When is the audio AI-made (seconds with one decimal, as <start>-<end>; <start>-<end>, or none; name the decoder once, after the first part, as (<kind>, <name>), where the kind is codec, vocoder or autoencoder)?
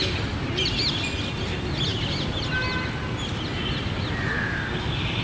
none